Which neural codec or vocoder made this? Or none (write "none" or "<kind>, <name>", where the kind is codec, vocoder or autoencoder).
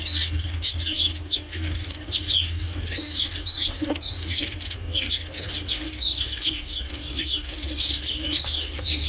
codec, DAC